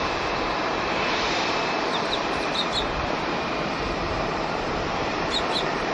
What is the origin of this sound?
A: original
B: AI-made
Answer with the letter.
B